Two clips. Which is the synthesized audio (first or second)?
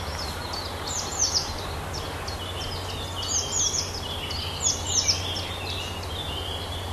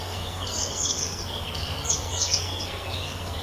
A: second